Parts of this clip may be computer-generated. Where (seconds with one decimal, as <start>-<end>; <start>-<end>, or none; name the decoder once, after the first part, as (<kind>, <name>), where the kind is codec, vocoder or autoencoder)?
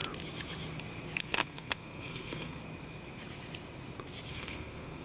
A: 1.2-2.6 (codec, SNAC); 4.3-5.0